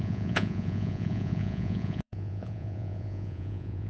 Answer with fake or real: fake